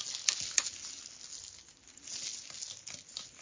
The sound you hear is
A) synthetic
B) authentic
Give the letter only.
B